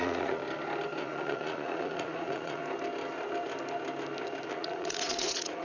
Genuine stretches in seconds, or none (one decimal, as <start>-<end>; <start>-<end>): 0.4-1.0; 2.6-4.5